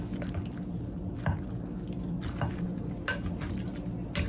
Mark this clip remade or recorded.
recorded